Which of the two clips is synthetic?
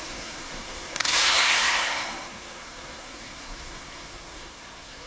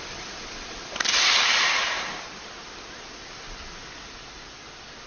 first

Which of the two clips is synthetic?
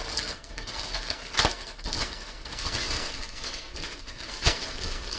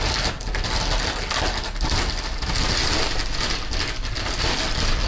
first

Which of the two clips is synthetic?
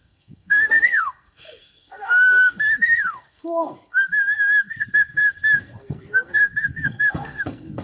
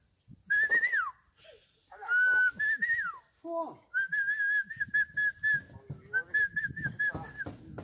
first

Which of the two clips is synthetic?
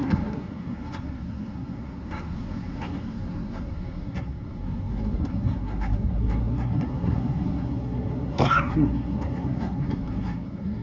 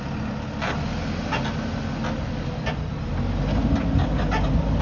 first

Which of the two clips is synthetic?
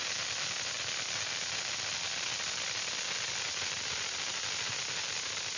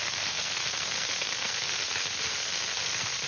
second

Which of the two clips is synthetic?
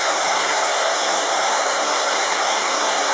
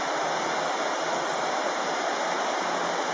first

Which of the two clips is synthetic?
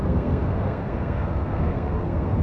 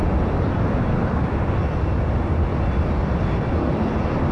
first